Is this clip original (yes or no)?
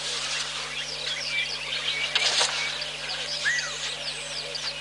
yes